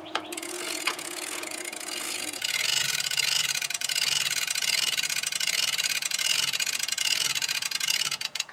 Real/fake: fake